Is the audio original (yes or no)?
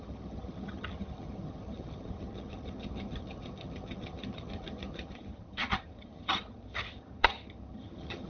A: no